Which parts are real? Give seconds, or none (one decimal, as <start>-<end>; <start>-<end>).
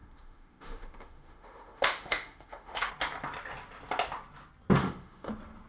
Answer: 2.9-4.8; 5.3-5.7